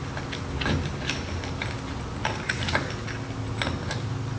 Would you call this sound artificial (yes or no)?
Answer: no